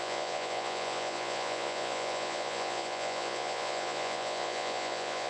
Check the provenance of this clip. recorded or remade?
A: remade